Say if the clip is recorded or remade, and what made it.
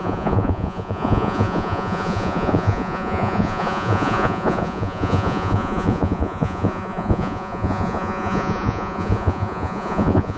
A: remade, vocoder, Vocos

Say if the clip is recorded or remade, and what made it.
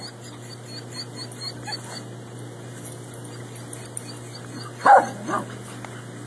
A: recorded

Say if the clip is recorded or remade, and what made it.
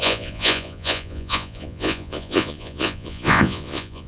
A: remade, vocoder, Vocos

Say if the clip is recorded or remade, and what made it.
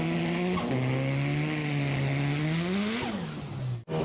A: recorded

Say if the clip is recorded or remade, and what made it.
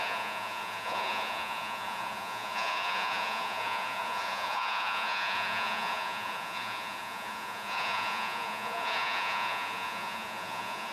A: remade, vocoder, Vocos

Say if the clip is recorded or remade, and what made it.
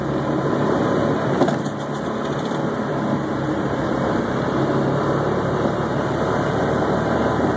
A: recorded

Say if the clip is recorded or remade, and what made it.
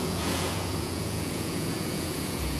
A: remade, vocoder, Vocos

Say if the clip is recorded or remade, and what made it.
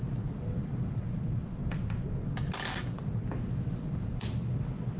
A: recorded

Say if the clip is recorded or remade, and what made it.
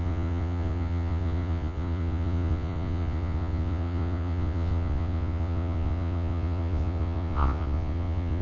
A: remade, vocoder, Vocos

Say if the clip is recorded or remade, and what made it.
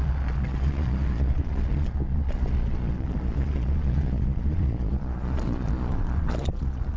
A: remade, vocoder, Vocos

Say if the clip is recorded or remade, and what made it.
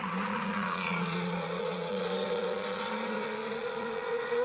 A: remade, vocoder, Vocos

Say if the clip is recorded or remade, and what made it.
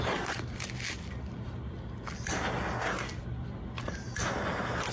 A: recorded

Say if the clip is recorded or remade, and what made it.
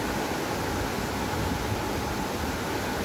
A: recorded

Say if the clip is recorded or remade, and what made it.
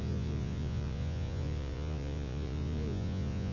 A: remade, vocoder, Vocos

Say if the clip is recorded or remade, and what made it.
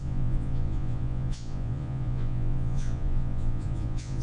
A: remade, vocoder, Vocos